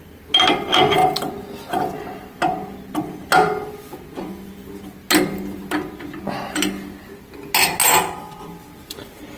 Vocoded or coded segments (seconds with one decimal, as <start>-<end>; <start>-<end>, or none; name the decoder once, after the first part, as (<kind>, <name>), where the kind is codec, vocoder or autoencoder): none